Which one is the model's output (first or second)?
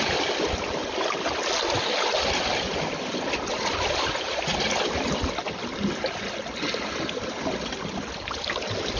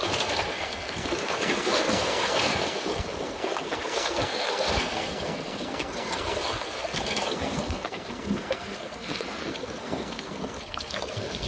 second